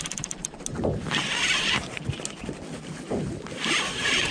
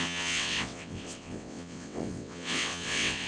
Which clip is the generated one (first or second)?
second